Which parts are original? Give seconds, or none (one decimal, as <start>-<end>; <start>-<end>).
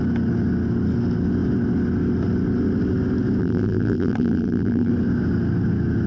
0.0-3.4; 4.9-6.1